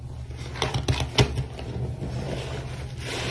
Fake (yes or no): no